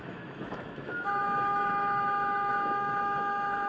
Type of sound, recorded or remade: remade